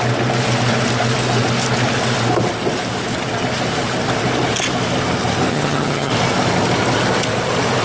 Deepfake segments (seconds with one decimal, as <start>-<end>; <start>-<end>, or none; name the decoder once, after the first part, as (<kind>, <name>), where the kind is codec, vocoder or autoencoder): 5.5-6.1 (vocoder, HiFi-GAN)